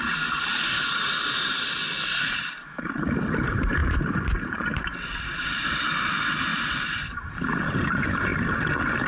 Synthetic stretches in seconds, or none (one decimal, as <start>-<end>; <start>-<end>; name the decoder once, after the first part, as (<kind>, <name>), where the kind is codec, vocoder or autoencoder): 0.0-9.1 (vocoder, BigVGAN v2)